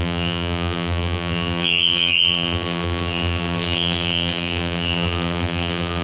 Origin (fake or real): fake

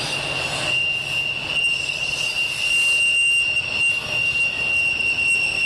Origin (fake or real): real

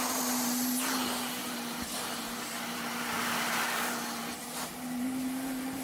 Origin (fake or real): fake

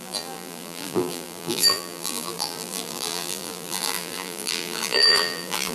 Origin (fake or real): fake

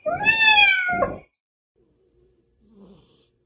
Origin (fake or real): fake